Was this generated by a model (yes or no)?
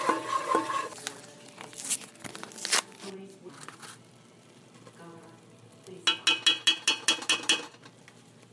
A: no